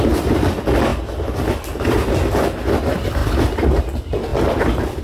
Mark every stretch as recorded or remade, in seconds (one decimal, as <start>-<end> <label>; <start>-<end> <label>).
0.0-0.9 recorded; 0.9-2.2 remade; 2.2-3.2 recorded; 3.2-3.8 remade; 3.8-5.0 recorded